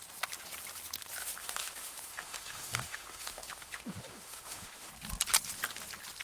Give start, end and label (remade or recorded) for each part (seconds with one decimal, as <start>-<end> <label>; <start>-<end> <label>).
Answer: 0.0-1.2 recorded; 1.2-4.9 remade; 4.9-6.2 recorded